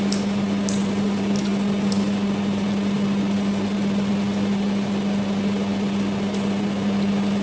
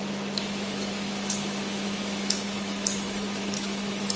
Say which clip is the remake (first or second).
second